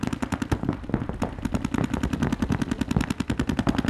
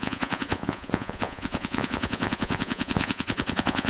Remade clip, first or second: second